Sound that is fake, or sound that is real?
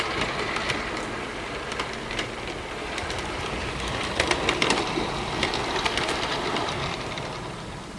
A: fake